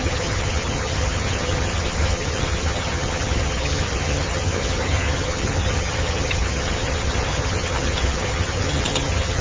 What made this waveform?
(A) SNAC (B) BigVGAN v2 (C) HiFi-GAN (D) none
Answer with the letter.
C